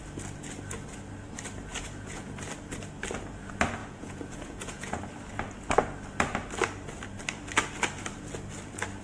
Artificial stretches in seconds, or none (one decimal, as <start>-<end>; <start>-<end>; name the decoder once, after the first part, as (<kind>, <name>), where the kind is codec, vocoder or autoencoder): 1.7-2.3 (vocoder, Vocos); 3.8-5.0